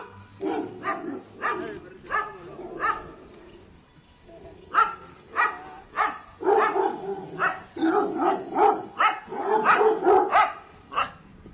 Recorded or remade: recorded